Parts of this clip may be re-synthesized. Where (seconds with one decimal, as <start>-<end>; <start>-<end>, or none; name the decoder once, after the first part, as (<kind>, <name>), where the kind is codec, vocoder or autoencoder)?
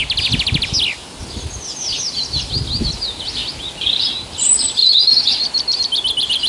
none